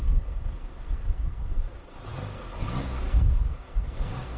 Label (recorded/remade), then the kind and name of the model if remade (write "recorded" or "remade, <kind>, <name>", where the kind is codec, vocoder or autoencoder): remade, codec, SNAC